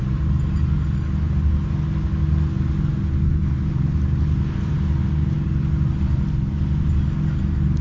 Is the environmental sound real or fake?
real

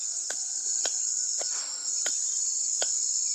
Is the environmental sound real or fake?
real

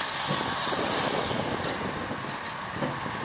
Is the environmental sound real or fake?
real